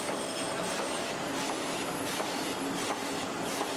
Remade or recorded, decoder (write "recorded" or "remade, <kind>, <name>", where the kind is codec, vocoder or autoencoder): recorded